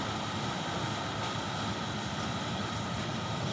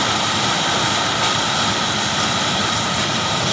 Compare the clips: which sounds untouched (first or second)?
first